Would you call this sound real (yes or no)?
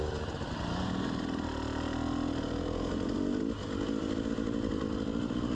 yes